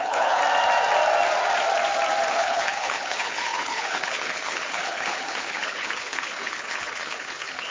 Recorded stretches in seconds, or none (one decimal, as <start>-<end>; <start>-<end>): 0.4-2.3